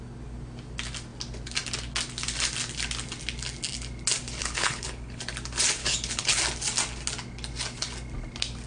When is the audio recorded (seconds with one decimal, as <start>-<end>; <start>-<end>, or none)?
0.0-4.4; 5.2-5.8; 6.4-8.7